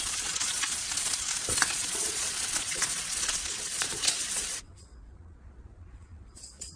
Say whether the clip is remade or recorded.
remade